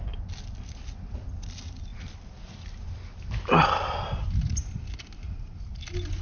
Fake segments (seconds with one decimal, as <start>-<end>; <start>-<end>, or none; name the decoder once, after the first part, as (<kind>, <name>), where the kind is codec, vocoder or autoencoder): none